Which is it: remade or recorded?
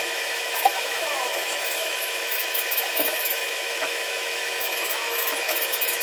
remade